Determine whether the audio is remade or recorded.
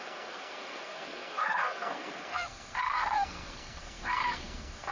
remade